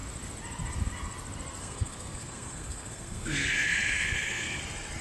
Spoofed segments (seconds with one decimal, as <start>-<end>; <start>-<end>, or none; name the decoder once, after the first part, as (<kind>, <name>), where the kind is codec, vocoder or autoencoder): 1.6-4.6 (codec, SNAC)